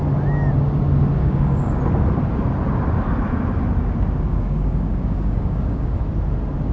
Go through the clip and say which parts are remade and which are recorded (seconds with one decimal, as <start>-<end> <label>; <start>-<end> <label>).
0.0-1.2 recorded; 1.2-1.8 remade; 1.8-4.3 recorded; 4.3-6.0 remade; 6.0-6.7 recorded